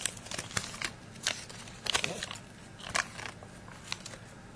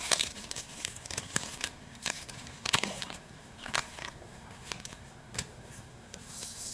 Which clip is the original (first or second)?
first